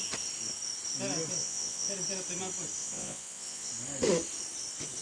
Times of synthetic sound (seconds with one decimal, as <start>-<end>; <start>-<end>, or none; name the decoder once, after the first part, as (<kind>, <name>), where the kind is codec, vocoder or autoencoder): 1.4-1.9 (vocoder, Vocos); 2.8-3.7